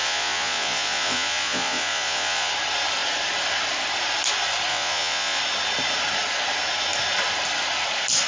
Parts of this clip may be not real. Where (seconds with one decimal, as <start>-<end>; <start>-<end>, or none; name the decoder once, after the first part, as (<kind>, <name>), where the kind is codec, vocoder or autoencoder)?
0.0-2.5 (vocoder, Vocos); 4.7-5.4